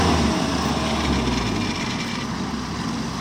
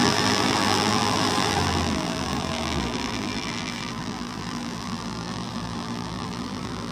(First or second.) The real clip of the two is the first